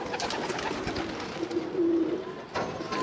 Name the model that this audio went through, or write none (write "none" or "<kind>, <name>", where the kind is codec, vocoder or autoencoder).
none